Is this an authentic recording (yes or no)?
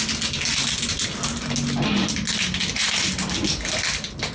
yes